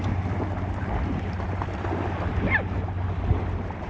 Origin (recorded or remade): recorded